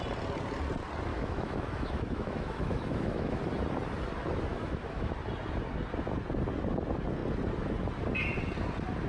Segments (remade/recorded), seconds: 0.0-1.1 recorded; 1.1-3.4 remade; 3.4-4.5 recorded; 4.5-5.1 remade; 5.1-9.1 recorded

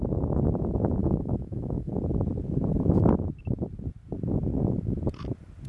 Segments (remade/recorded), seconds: 0.0-1.0 recorded; 1.0-1.9 remade; 1.9-5.7 recorded

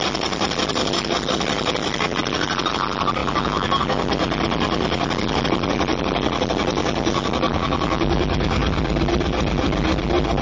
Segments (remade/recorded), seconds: 0.0-3.2 recorded; 3.2-3.8 remade; 3.8-7.5 recorded; 7.5-8.6 remade; 8.6-10.4 recorded

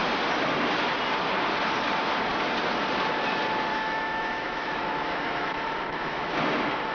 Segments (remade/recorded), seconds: 0.0-3.7 recorded; 3.7-6.3 remade; 6.3-6.9 recorded

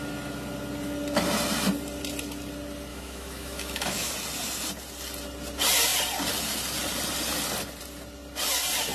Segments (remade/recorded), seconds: 0.0-2.9 recorded; 2.9-4.1 remade; 4.1-8.9 recorded

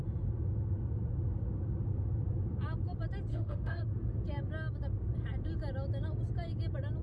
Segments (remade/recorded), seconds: 0.0-3.3 recorded; 3.3-3.8 remade; 3.8-7.0 recorded